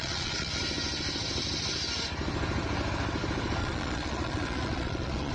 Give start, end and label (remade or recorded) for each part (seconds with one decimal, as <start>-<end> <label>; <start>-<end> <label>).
0.0-0.5 remade; 0.5-3.6 recorded; 3.6-5.3 remade